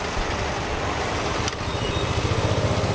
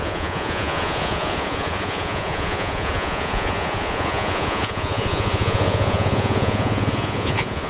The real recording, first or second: first